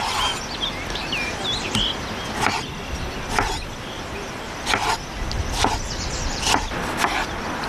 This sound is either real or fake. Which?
real